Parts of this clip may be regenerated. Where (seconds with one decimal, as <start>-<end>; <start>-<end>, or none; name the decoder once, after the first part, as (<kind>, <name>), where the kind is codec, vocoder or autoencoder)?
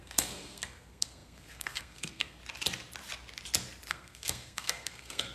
0.0-2.4 (codec, SNAC); 3.9-5.3